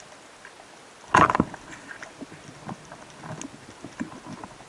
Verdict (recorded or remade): recorded